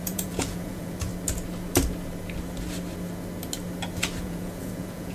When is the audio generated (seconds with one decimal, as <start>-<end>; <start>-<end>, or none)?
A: 0.0-1.1; 4.2-5.1